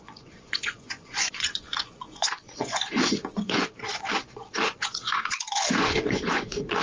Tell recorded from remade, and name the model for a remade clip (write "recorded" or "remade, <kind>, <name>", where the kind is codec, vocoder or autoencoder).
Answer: remade, vocoder, Vocos